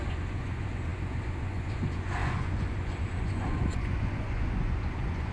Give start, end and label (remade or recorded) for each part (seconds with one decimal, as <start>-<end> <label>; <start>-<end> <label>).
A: 0.0-5.3 remade